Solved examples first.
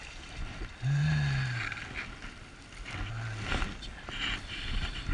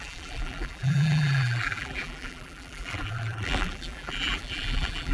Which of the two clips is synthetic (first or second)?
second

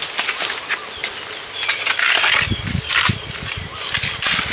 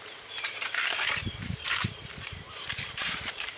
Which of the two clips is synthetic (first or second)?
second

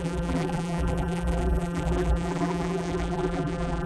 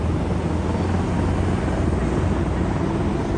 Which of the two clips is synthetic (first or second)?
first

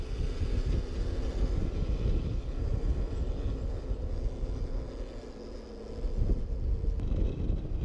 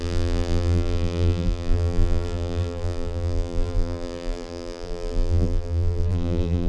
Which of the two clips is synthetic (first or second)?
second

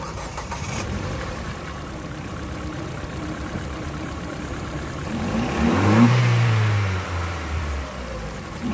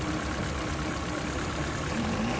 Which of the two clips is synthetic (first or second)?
first